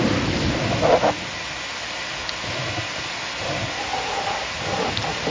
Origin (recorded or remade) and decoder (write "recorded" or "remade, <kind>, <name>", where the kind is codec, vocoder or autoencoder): remade, vocoder, BigVGAN v2